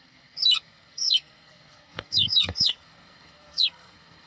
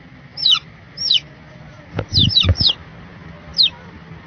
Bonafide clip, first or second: second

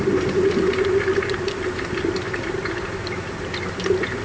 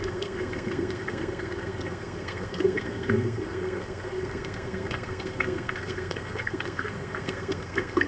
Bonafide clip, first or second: first